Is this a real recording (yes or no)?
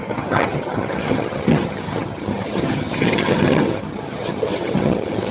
no